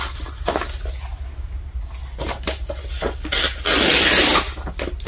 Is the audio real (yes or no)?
yes